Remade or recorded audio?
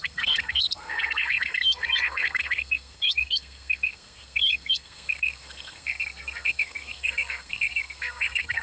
remade